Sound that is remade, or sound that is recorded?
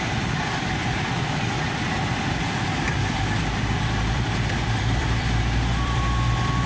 remade